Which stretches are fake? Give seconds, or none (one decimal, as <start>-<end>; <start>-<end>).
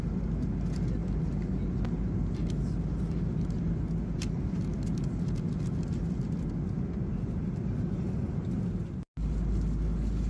none